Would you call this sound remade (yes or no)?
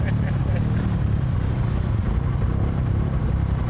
yes